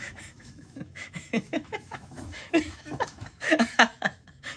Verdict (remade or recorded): remade